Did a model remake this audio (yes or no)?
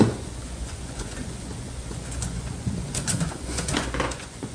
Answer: yes